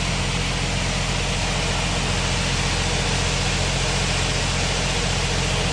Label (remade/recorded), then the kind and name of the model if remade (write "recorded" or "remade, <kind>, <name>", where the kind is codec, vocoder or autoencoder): recorded